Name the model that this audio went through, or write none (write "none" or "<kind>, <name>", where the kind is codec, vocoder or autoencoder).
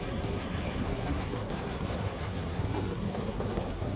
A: codec, SNAC